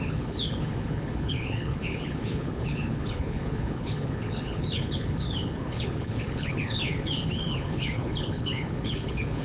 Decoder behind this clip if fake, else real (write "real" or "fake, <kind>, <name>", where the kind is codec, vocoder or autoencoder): fake, codec, HILCodec